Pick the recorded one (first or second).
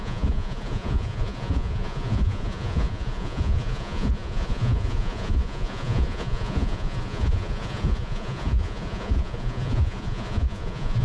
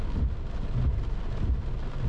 second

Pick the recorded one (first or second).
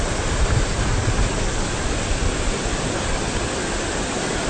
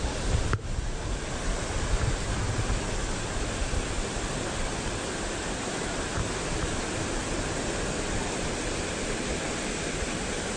second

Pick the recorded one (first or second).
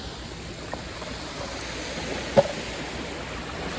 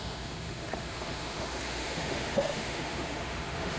first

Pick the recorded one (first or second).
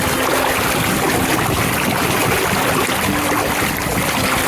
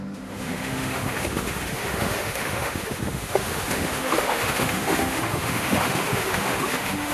first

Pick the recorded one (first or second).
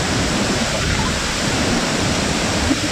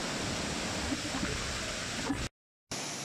second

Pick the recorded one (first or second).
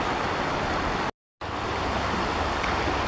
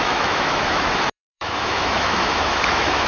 first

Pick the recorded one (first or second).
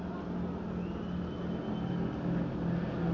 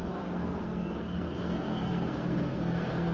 first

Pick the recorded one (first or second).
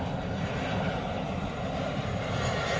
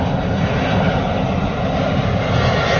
second